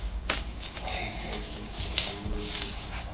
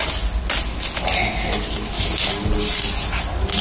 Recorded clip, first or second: second